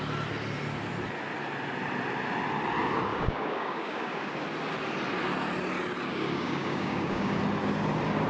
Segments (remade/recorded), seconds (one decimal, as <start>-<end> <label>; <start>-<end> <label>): 0.0-3.1 recorded; 3.1-4.3 remade; 4.3-6.1 recorded; 6.1-7.4 remade; 7.4-8.3 recorded